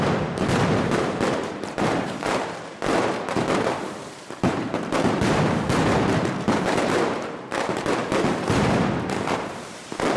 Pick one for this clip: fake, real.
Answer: fake